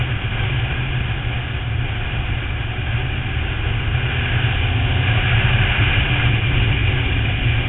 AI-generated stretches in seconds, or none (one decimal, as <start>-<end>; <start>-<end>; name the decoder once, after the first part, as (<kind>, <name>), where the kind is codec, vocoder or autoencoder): none